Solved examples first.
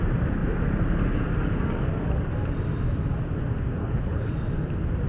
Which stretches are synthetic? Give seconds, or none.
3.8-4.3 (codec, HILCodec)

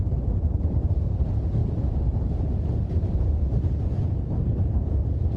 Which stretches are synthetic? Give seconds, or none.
1.6-4.8 (vocoder, BigVGAN v2)

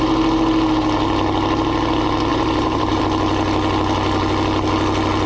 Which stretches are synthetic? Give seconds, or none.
2.3-3.0 (vocoder, BigVGAN v2)